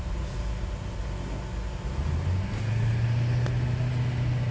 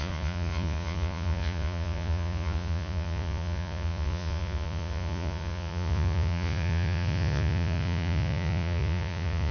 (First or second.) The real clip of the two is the first